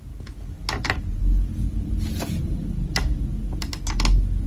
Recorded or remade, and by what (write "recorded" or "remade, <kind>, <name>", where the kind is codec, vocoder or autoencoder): recorded